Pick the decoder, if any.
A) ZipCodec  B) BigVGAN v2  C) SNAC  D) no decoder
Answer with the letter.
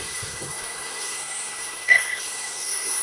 C